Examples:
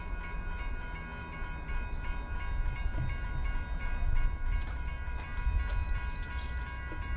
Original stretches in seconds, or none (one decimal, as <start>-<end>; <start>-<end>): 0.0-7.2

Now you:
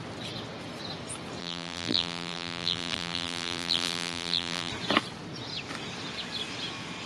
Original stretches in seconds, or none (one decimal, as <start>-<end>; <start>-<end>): 0.0-1.4; 4.7-7.1

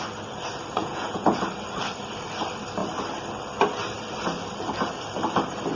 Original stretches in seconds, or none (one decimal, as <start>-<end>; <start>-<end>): 0.0-0.8; 1.4-5.8

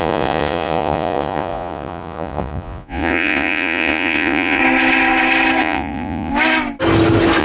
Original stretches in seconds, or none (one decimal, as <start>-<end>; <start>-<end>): 4.6-5.6; 6.3-7.4

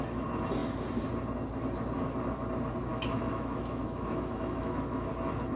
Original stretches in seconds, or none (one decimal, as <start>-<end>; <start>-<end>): 0.0-2.9; 5.1-5.6

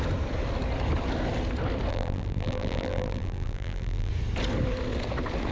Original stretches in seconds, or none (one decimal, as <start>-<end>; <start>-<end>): 0.0-1.9; 4.1-5.5